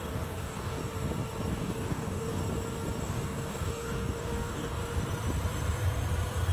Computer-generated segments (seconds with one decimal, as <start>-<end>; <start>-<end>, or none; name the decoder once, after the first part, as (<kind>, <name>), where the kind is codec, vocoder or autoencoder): 0.0-0.8 (codec, DAC); 1.5-2.4; 3.0-4.8

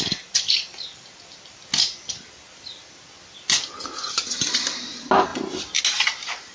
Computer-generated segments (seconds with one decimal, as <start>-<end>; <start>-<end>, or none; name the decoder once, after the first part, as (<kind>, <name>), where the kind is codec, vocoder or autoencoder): none

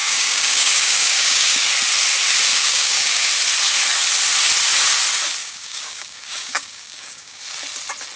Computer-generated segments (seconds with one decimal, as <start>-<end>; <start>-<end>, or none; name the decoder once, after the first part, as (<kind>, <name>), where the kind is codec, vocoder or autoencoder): 0.0-1.7 (codec, DAC); 2.5-3.3; 5.4-7.4

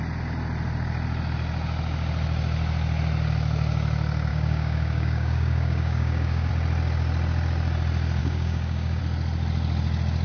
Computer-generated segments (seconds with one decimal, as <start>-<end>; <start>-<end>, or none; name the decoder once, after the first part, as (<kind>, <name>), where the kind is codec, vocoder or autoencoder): 4.3-6.5 (codec, DAC); 8.2-9.0

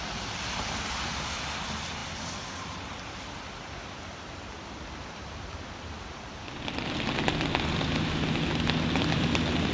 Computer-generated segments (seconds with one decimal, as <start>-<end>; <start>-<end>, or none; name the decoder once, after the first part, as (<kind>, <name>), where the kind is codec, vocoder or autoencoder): none

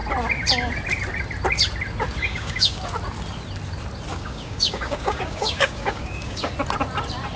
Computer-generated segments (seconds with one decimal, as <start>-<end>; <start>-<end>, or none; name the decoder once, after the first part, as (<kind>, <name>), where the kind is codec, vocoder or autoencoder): 2.2-2.8 (codec, DAC); 4.1-6.5

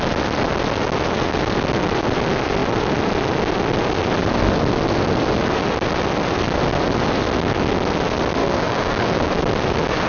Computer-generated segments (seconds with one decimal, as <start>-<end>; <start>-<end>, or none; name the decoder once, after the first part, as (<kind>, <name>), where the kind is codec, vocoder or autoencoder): 8.4-9.3 (codec, DAC)